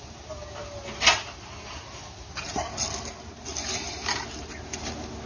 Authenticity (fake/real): real